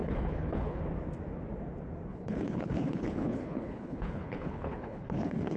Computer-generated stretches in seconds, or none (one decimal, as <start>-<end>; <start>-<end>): 0.0-0.8; 2.1-5.6